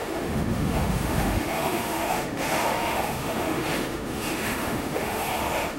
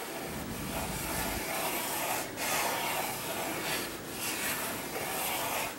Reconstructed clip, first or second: first